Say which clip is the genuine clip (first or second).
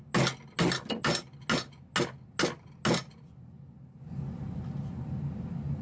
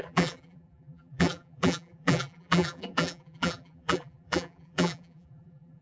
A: first